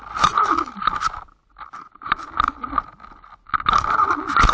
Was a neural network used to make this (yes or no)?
no